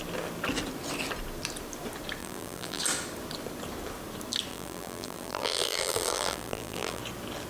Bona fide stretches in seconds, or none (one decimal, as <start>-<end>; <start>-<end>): 0.0-2.2; 2.8-4.5; 7.0-7.5